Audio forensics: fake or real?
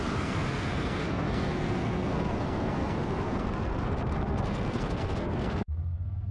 fake